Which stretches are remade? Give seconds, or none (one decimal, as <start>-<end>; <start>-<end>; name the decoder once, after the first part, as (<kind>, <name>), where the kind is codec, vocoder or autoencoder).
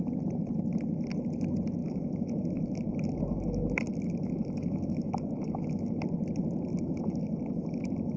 1.8-6.0 (autoencoder, DAC-VAE); 6.7-8.2